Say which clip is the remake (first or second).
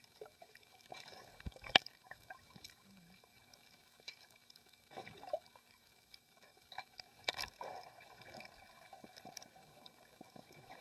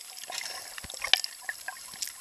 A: first